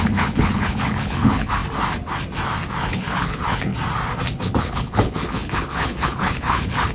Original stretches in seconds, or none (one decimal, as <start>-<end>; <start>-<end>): 1.6-2.7; 3.7-4.4